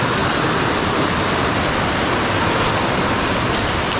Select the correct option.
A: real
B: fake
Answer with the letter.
A